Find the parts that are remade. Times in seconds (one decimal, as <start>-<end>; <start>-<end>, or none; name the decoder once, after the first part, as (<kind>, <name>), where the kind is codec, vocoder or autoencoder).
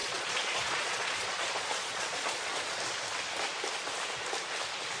0.0-2.8 (vocoder, Vocos)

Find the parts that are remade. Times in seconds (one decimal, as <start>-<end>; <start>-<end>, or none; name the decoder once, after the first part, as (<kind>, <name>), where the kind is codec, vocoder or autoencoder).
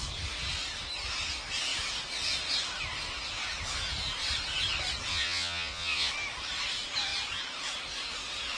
5.1-6.1 (vocoder, Vocos)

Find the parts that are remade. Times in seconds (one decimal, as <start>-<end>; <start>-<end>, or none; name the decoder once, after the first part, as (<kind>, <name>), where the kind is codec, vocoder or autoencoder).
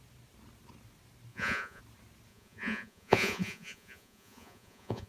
1.3-1.8 (vocoder, Vocos); 2.3-5.1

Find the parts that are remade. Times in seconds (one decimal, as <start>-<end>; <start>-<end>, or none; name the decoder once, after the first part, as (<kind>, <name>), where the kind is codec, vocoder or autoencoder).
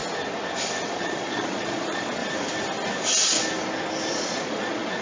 0.9-2.2 (vocoder, Vocos); 4.1-5.0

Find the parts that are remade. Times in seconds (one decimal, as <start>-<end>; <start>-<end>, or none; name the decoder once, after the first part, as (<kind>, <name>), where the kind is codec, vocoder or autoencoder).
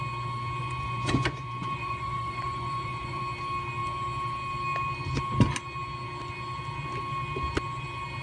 0.6-3.2 (vocoder, Vocos)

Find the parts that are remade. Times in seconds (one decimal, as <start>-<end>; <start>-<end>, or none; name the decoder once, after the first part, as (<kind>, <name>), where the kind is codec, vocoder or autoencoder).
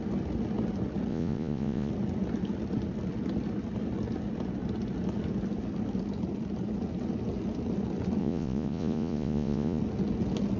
1.1-1.9 (vocoder, Vocos); 8.2-9.8